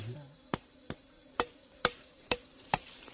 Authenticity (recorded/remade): remade